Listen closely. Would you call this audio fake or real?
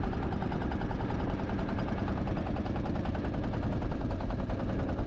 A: real